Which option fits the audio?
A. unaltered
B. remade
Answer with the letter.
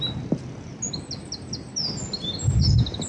A